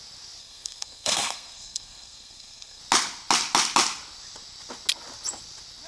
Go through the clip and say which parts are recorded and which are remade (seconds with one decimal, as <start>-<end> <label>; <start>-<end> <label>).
0.0-0.4 recorded; 0.4-2.8 remade; 2.8-5.9 recorded